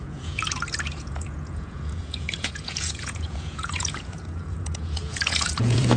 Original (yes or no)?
no